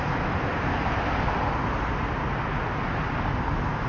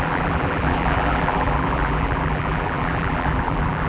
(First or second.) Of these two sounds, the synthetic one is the second